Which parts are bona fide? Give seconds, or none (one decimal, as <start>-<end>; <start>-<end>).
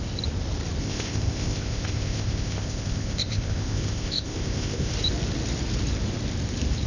0.0-0.8; 4.9-6.9